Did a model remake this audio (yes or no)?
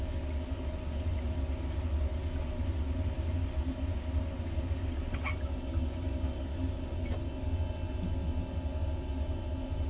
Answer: no